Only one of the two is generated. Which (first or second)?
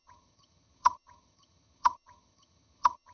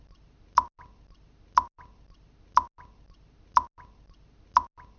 first